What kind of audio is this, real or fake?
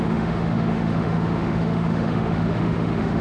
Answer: fake